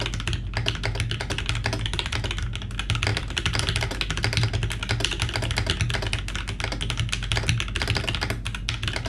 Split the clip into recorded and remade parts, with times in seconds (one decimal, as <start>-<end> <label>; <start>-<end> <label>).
0.0-3.1 recorded; 3.1-4.0 remade; 4.0-9.1 recorded